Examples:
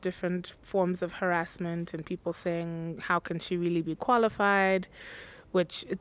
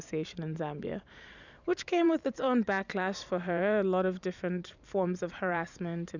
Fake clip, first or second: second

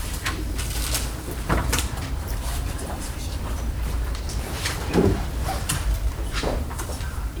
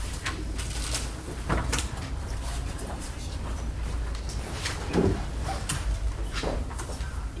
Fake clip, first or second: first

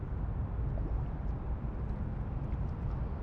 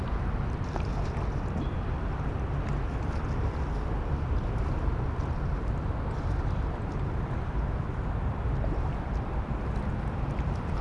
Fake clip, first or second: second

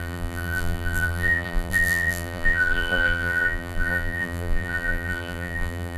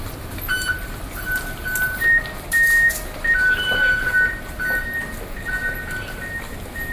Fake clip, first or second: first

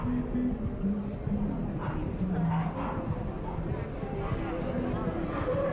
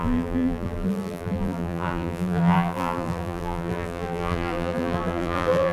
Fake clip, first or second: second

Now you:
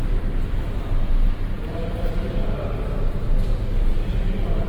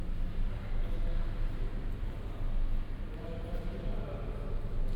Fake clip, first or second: first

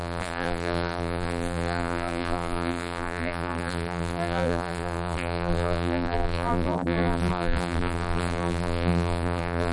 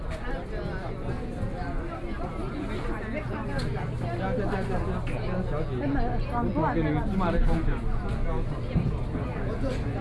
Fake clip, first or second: first